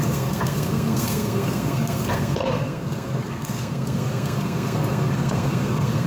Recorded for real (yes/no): no